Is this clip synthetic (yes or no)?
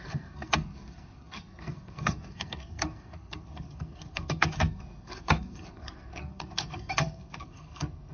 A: yes